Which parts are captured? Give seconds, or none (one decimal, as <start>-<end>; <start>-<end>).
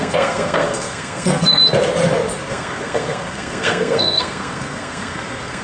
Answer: 1.6-2.5